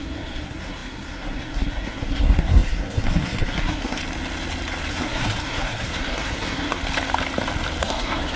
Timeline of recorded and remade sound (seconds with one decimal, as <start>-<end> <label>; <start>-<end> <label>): 0.0-4.0 remade; 4.0-4.9 recorded; 4.9-6.8 remade; 6.8-7.8 recorded; 7.8-8.4 remade